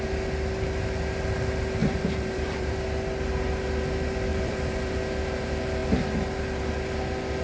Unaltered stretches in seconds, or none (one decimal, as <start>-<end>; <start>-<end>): 0.0-1.8; 2.7-4.3; 4.9-7.4